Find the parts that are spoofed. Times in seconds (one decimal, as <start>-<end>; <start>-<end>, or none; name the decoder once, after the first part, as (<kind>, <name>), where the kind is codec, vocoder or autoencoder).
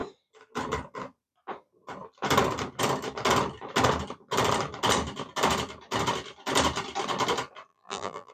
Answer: 7.7-8.3 (vocoder, BigVGAN v2)